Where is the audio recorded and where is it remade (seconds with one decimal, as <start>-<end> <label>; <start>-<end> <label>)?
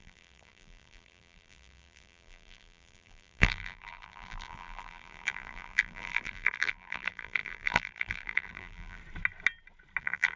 0.0-9.0 remade; 9.0-10.0 recorded; 10.0-10.4 remade